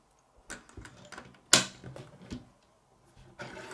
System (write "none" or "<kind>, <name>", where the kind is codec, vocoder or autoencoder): none